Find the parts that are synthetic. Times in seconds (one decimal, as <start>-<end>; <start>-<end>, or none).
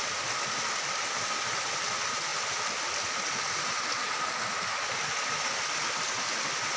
none